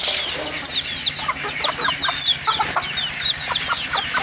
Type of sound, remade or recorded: recorded